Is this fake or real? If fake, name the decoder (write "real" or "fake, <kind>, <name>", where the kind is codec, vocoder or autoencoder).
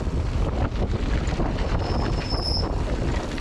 real